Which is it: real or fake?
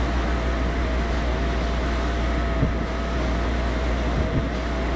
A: real